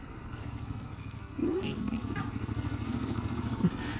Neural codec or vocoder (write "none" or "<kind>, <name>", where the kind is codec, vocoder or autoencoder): codec, SNAC